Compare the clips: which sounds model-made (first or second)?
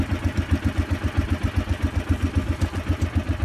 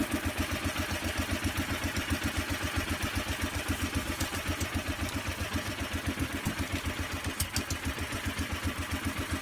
second